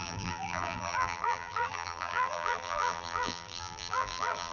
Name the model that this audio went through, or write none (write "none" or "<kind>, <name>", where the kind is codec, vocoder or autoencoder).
vocoder, BigVGAN v2